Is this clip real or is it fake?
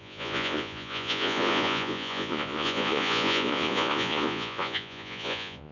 fake